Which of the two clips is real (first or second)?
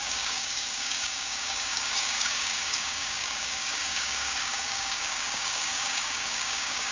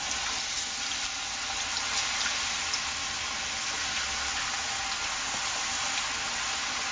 second